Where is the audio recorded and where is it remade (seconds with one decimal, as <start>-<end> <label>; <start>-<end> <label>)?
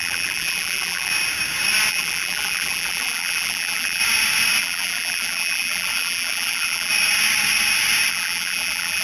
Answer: 0.0-1.1 remade; 1.1-1.9 recorded; 1.9-4.0 remade; 4.0-4.6 recorded; 4.6-6.9 remade; 6.9-8.1 recorded; 8.1-9.0 remade